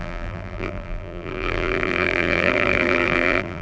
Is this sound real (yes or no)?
no